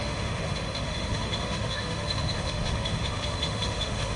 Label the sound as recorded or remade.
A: remade